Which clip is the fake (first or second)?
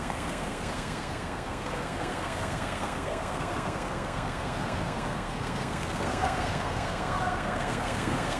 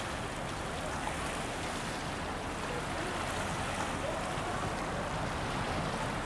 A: first